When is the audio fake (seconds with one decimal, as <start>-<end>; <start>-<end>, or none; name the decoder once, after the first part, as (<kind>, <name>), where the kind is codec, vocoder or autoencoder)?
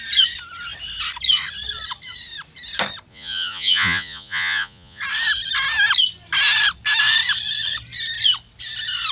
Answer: 3.1-5.0 (vocoder, Vocos)